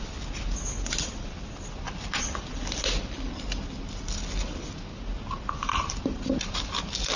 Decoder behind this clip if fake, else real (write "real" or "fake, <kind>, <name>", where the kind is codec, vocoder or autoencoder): real